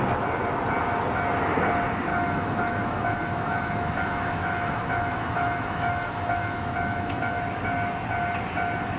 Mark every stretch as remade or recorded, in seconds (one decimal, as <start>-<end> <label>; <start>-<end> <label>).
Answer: 0.0-2.1 recorded; 2.1-7.4 remade; 7.4-9.0 recorded

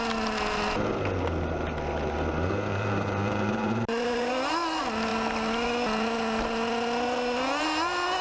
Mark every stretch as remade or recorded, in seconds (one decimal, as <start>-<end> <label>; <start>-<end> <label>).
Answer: 0.0-2.7 recorded; 2.7-4.3 remade; 4.3-8.2 recorded

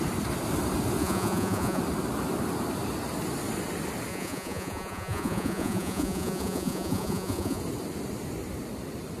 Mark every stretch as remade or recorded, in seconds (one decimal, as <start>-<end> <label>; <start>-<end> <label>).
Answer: 0.0-1.0 recorded; 1.0-1.8 remade; 1.8-4.1 recorded; 4.1-7.6 remade; 7.6-9.2 recorded

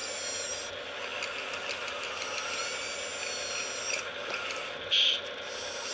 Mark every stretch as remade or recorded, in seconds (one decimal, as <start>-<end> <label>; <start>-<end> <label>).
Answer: 0.0-5.9 recorded